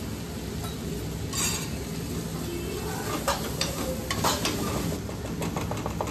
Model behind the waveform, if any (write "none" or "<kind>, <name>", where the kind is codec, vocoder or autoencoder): none